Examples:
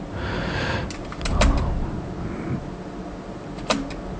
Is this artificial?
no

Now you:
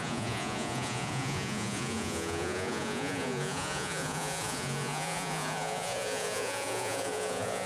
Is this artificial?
yes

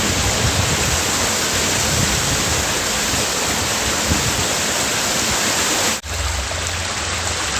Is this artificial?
no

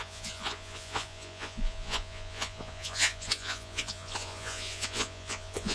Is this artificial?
yes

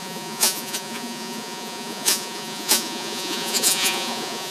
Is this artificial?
yes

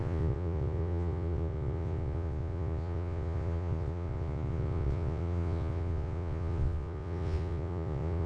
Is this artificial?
yes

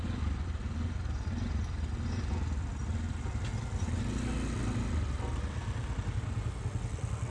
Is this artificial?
no